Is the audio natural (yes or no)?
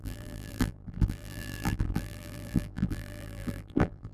no